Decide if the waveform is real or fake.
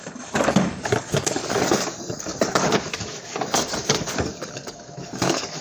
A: fake